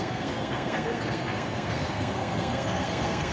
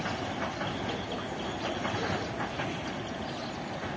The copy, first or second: first